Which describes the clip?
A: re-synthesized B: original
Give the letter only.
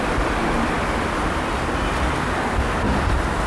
B